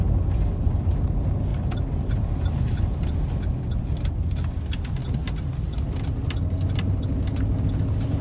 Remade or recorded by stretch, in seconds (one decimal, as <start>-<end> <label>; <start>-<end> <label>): 0.0-8.2 recorded